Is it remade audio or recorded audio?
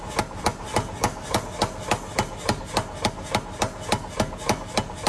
recorded